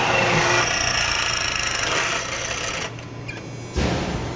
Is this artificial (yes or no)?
no